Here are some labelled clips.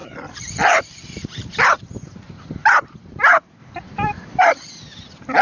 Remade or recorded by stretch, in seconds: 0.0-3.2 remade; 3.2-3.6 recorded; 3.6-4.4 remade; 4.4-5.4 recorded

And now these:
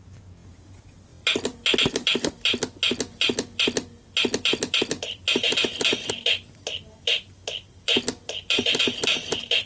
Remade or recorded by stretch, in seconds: 0.0-9.7 recorded

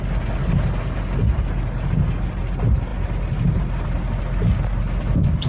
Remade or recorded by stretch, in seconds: 0.0-5.5 recorded

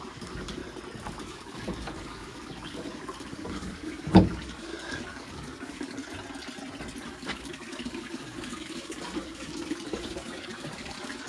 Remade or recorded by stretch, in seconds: 0.0-0.6 remade; 0.6-1.1 recorded; 1.1-6.0 remade; 6.0-7.1 recorded; 7.1-11.3 remade

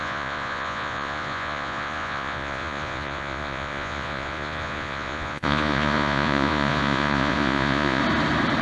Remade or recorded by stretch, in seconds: 0.0-8.0 remade; 8.0-8.6 recorded

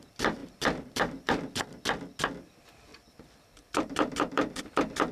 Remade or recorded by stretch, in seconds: 0.0-0.4 recorded; 0.4-1.6 remade; 1.6-2.9 recorded; 2.9-4.6 remade; 4.6-5.1 recorded

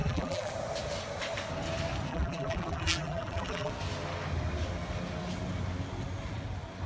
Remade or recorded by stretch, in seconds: 0.0-0.5 remade; 0.5-2.1 recorded; 2.1-3.7 remade; 3.7-6.9 recorded

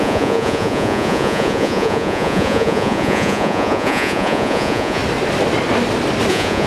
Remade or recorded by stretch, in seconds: 0.0-5.0 remade; 5.0-6.3 recorded; 6.3-6.7 remade